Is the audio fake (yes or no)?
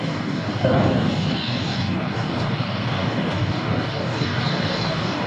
yes